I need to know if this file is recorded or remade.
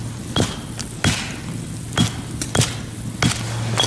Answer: recorded